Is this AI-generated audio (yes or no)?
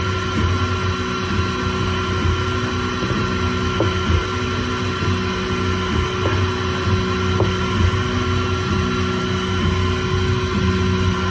no